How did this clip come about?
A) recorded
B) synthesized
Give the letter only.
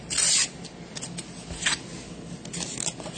A